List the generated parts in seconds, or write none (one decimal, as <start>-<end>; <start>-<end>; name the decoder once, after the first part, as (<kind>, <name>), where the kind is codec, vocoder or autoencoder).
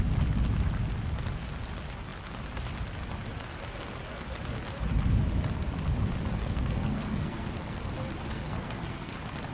6.4-7.9 (codec, SNAC); 8.3-9.1